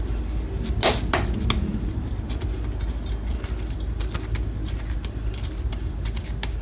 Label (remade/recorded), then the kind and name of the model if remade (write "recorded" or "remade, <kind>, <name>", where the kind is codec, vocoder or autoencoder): recorded